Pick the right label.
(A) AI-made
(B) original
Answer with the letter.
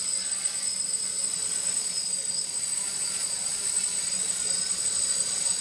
A